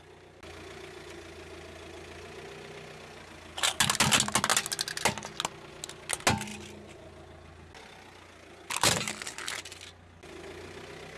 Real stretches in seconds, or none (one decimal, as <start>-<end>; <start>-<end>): 0.0-11.2